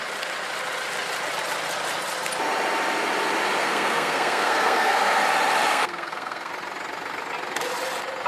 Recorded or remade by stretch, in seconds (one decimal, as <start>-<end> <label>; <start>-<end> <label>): 0.0-3.6 recorded; 3.6-5.2 remade; 5.2-5.7 recorded; 5.7-6.5 remade; 6.5-8.3 recorded